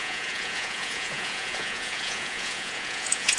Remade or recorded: remade